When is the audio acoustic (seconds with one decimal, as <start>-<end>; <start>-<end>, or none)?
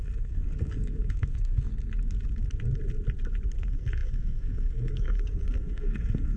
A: 1.7-3.6